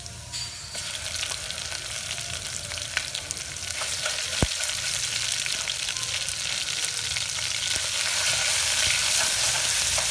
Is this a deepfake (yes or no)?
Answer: no